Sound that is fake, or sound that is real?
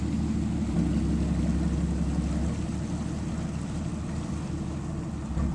real